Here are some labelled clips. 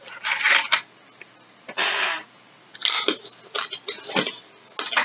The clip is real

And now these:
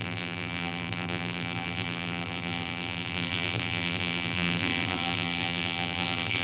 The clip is fake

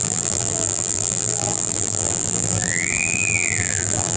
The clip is fake